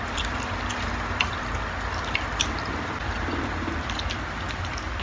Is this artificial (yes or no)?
yes